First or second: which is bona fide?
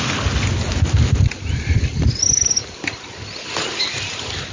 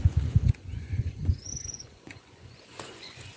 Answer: first